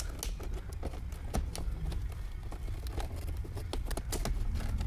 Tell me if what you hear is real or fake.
real